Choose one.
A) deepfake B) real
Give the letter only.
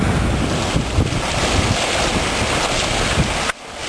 B